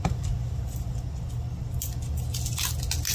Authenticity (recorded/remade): recorded